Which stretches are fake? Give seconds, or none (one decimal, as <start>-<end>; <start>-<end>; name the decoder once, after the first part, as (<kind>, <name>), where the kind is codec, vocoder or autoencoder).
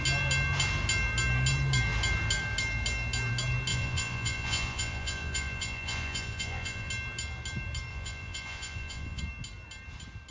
3.7-6.9 (vocoder, Vocos); 7.9-9.2